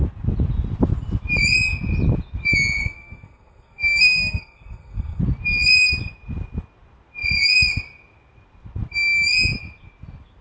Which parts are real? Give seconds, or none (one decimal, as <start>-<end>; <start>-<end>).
0.0-2.8; 5.2-10.4